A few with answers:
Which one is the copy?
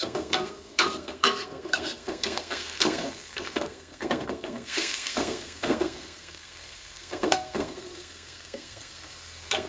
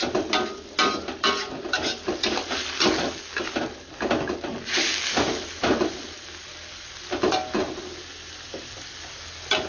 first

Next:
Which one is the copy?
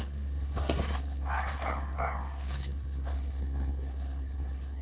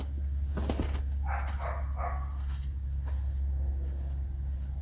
first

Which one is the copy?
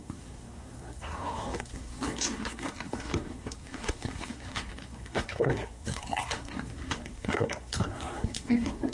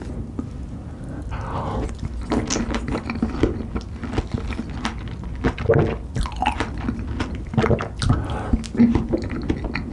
first